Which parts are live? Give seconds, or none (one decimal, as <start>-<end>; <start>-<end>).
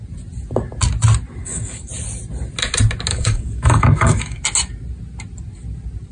0.0-1.4; 1.9-3.1; 4.4-6.1